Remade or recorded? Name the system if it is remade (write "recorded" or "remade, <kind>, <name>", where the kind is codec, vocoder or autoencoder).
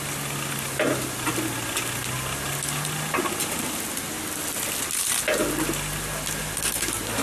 recorded